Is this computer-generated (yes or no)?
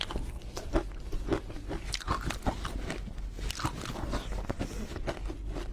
no